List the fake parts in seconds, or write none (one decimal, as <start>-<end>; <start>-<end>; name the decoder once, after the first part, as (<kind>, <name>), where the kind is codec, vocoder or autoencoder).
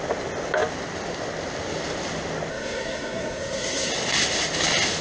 2.5-3.9 (codec, SNAC)